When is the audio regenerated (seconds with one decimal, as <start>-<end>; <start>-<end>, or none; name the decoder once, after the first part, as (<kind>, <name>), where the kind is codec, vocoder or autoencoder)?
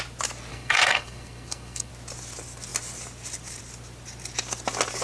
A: 0.5-1.9 (codec, SNAC)